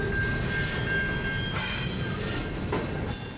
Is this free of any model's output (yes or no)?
yes